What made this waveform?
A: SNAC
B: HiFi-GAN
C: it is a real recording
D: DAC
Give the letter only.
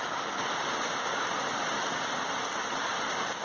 C